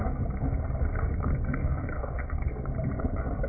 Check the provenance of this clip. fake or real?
fake